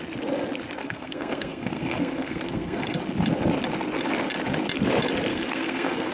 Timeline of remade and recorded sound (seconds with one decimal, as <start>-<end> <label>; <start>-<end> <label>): 0.0-0.8 recorded; 0.8-3.0 remade; 3.0-5.3 recorded; 5.3-6.1 remade